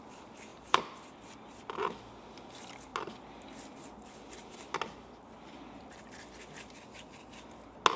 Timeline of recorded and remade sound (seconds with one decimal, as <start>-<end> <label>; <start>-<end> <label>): 0.0-0.5 recorded; 0.5-1.1 remade; 1.1-8.0 recorded